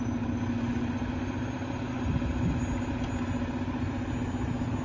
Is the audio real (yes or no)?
yes